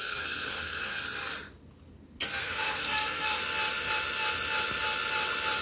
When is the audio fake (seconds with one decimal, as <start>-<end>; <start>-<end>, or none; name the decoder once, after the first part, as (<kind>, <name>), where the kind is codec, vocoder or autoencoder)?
0.0-1.0 (codec, SNAC); 2.4-3.4